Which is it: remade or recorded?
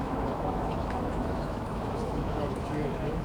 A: remade